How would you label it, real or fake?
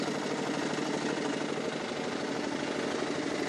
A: real